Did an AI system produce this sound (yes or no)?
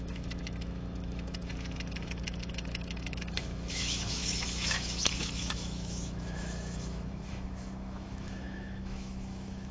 yes